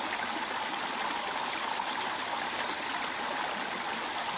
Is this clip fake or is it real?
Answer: real